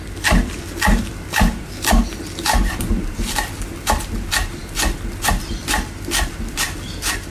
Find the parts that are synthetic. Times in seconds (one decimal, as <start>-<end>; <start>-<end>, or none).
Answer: 0.0-4.6; 5.5-7.3